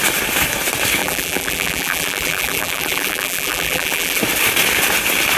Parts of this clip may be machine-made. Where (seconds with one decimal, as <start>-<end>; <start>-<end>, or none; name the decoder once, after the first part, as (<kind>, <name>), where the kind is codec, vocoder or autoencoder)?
1.0-4.2 (vocoder, BigVGAN v2)